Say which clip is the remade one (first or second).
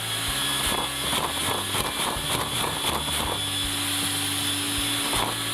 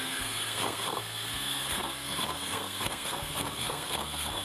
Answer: second